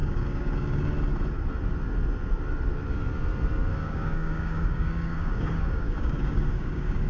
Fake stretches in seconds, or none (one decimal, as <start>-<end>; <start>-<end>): 0.0-0.9; 3.7-7.1